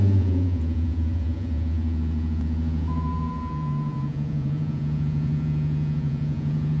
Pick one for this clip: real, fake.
fake